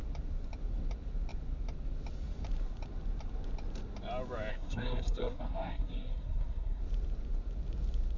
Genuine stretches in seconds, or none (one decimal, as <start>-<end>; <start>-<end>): 0.0-4.5; 6.8-8.2